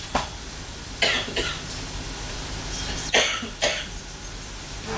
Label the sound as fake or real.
real